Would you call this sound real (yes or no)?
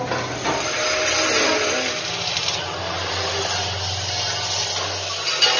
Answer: yes